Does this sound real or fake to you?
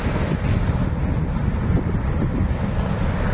real